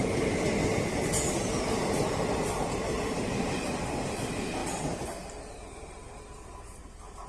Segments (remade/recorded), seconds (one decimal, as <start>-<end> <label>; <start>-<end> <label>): 0.0-7.3 recorded

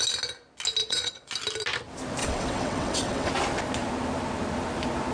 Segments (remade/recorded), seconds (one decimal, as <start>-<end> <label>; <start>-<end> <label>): 0.0-0.8 recorded; 0.8-1.3 remade; 1.3-2.2 recorded; 2.2-3.3 remade; 3.3-5.1 recorded